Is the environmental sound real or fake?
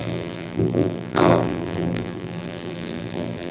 fake